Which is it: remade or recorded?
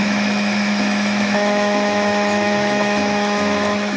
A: remade